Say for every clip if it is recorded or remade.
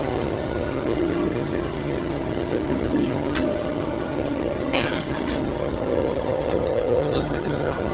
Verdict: remade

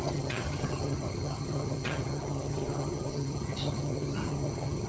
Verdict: remade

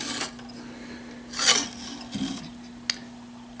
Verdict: recorded